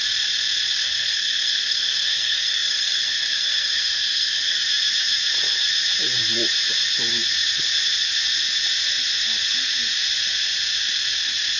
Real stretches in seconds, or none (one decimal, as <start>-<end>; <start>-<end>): 0.0-0.8; 4.6-11.6